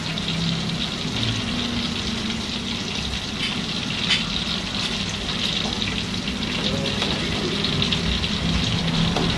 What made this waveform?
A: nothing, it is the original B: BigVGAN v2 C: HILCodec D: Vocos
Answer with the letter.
A